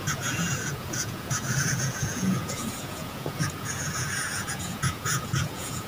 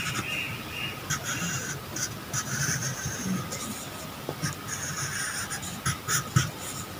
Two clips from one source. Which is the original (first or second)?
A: second